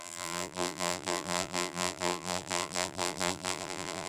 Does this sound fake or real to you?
fake